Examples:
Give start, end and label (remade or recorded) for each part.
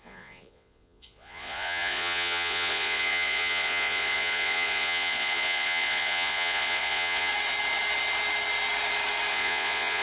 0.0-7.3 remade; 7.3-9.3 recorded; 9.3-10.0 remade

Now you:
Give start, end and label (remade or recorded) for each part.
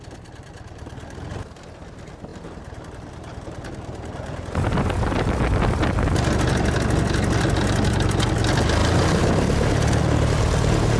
0.0-11.0 recorded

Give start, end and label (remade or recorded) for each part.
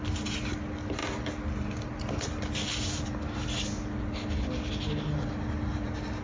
0.0-6.2 recorded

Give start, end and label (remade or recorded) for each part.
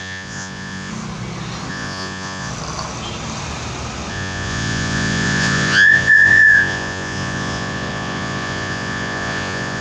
0.0-0.9 remade; 0.9-1.7 recorded; 1.7-2.5 remade; 2.5-4.1 recorded; 4.1-9.8 remade